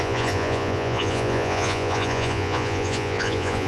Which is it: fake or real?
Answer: fake